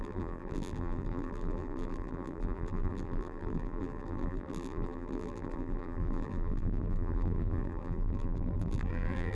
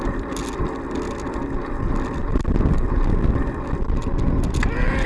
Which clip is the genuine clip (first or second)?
second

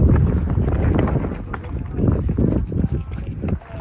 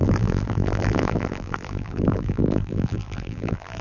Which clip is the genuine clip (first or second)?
first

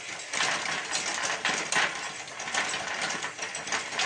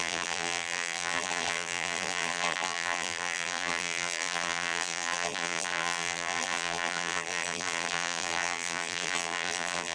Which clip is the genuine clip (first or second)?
first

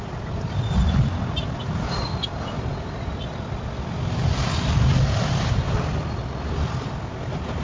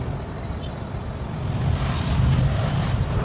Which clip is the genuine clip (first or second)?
second